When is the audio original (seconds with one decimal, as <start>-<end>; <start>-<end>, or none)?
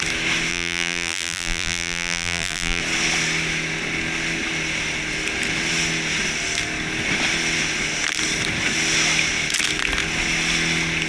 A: 0.0-0.5; 2.8-11.1